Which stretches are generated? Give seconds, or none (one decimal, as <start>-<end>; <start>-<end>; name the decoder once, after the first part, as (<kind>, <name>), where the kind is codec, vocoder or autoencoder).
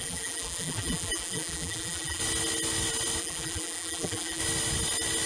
0.0-2.2 (vocoder, BigVGAN v2); 3.2-4.4